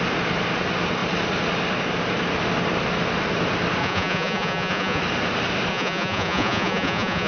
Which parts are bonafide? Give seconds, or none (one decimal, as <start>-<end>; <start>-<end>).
0.0-3.8; 5.0-5.7